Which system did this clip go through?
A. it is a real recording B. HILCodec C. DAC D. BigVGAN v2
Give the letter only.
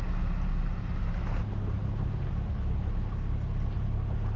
A